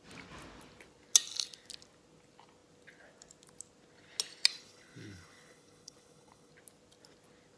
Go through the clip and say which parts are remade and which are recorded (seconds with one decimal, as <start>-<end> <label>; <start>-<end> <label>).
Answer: 0.0-4.5 recorded; 4.5-6.5 remade; 6.5-7.6 recorded